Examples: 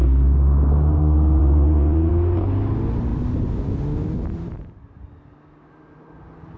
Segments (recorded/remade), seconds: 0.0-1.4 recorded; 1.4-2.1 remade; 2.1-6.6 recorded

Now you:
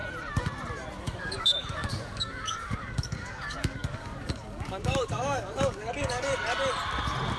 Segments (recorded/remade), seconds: 0.0-1.0 recorded; 1.0-6.3 remade; 6.3-7.4 recorded

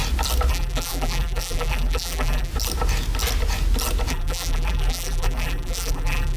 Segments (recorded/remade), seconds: 0.0-0.5 recorded; 0.5-2.5 remade; 2.5-4.1 recorded; 4.1-6.4 remade

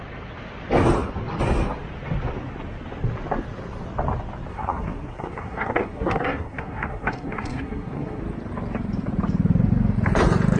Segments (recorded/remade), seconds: 0.0-4.5 recorded; 4.5-8.2 remade; 8.2-10.6 recorded

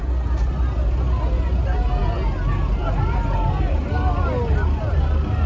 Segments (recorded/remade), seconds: 0.0-5.5 recorded

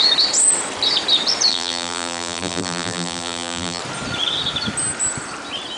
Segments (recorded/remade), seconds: 0.0-1.5 recorded; 1.5-3.8 remade; 3.8-5.8 recorded